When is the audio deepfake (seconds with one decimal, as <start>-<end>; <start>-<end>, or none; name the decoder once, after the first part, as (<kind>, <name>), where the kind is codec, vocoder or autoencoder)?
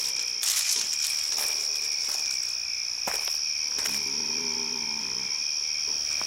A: none